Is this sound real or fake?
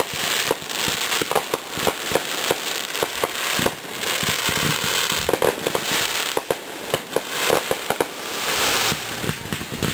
fake